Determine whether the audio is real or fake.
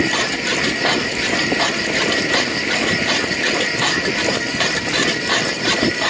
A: real